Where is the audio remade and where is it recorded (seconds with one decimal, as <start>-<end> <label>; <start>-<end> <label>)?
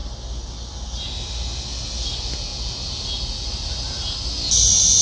0.0-5.0 recorded